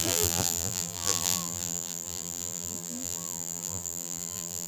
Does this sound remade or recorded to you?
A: remade